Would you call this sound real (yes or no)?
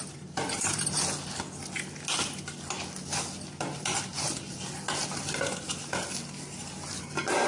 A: yes